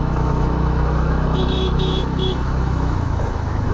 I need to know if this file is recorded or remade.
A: remade